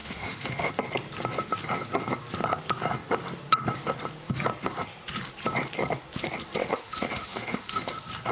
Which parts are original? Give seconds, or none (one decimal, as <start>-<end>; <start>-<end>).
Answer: 0.7-6.6; 7.9-8.3